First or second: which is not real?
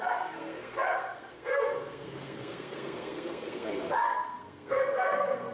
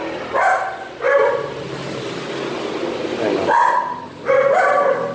first